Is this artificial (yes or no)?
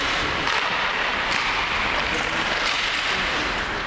no